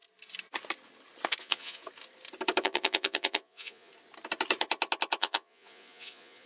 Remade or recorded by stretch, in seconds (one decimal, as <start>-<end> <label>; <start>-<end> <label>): 0.0-1.4 recorded; 1.4-1.8 remade; 1.8-2.6 recorded; 2.6-3.9 remade; 3.9-5.2 recorded; 5.2-6.5 remade